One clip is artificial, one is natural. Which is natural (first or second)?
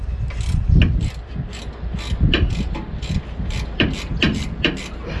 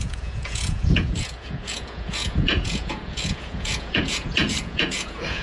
first